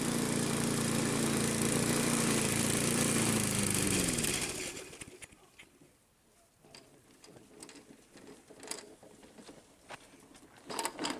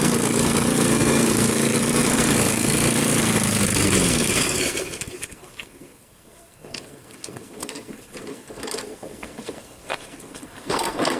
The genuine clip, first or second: first